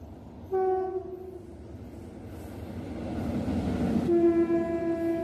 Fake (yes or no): no